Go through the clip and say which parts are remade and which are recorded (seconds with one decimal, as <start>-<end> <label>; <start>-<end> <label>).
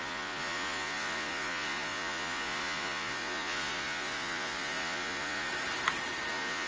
0.0-5.5 remade; 5.5-6.3 recorded; 6.3-6.7 remade